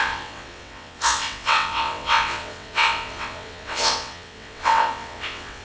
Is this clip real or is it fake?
fake